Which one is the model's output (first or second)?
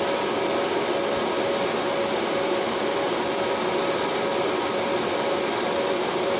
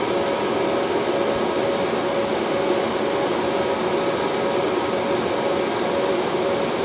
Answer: first